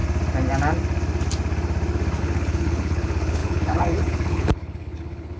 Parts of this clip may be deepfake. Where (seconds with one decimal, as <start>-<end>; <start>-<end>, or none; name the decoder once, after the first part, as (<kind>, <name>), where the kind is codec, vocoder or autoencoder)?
2.2-5.4 (codec, HILCodec)